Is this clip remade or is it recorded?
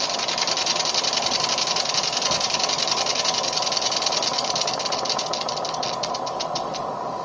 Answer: recorded